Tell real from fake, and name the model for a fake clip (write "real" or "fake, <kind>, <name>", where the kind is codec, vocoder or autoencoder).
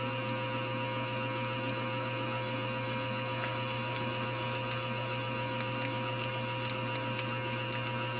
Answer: real